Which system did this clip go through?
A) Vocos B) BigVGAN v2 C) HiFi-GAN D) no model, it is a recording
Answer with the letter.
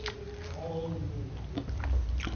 D